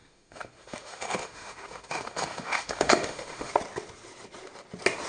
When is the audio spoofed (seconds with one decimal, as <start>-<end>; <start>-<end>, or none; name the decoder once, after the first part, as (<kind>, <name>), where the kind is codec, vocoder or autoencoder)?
0.0-3.5 (autoencoder, DAC-VAE)